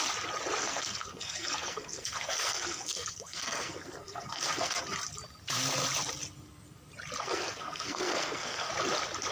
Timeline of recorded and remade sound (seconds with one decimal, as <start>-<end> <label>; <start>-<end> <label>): 0.0-0.6 recorded; 0.6-4.8 remade; 4.8-7.2 recorded; 7.2-8.7 remade; 8.7-9.3 recorded